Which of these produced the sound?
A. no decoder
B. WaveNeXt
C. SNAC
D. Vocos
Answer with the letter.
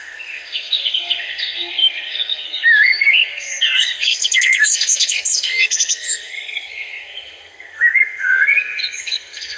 C